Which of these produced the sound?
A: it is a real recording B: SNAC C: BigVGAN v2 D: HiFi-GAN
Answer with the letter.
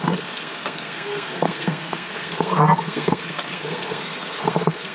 B